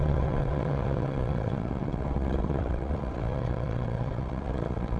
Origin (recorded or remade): remade